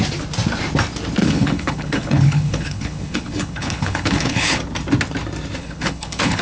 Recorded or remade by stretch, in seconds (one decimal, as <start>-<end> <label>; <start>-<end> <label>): 0.0-1.2 recorded; 1.2-4.6 remade; 4.6-5.6 recorded; 5.6-6.4 remade